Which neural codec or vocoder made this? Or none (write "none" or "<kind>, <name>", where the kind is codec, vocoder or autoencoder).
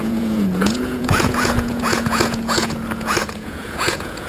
vocoder, Vocos